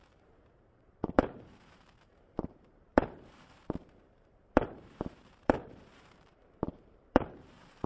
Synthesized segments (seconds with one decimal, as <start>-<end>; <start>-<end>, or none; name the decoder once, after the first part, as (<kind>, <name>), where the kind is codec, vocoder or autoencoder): 0.0-7.9 (vocoder, BigVGAN v2)